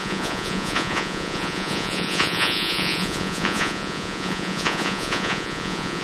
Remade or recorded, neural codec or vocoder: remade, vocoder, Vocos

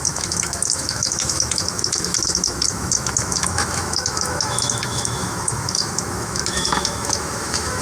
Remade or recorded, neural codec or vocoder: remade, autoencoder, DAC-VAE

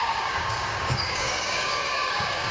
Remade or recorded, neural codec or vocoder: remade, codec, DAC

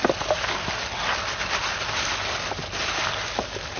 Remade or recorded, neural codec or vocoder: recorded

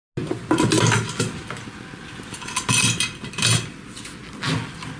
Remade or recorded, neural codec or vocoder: recorded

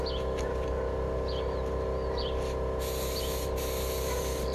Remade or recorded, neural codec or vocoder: recorded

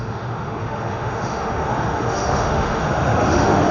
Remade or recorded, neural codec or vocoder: remade, autoencoder, DAC-VAE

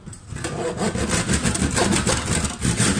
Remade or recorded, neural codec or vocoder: recorded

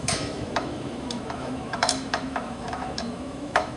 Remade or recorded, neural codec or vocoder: remade, autoencoder, DAC-VAE